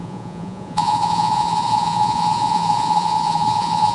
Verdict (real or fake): fake